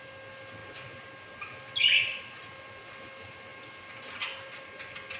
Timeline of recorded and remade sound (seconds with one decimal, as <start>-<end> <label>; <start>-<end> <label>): 0.0-5.2 recorded